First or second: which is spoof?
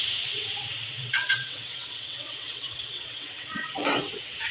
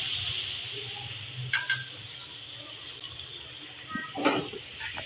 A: first